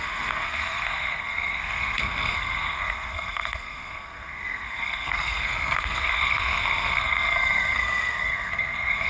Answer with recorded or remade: remade